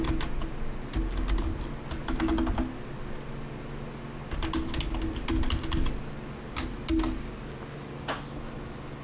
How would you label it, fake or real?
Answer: real